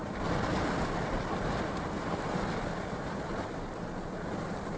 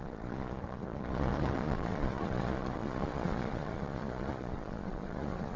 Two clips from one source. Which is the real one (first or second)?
first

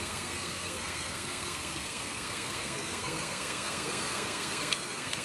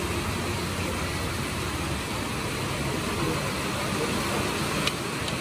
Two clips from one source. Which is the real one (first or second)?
second